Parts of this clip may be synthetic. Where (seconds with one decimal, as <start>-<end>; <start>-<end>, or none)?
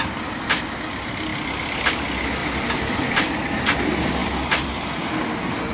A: 1.3-1.9; 2.4-3.1; 4.2-5.2